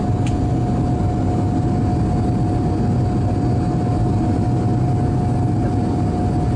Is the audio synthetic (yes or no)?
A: no